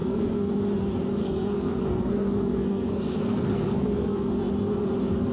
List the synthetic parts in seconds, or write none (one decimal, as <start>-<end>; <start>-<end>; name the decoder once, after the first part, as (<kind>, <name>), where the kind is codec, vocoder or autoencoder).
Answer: 0.0-0.5 (codec, SNAC); 1.2-4.4